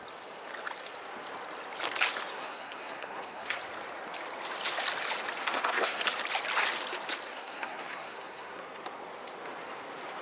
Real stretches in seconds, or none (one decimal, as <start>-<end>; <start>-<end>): 0.0-2.3; 3.6-5.4; 6.0-7.3; 8.8-10.2